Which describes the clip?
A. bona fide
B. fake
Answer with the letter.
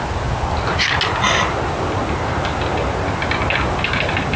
A